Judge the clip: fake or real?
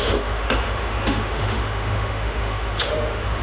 fake